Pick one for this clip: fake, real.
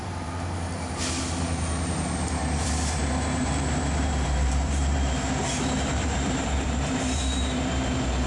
fake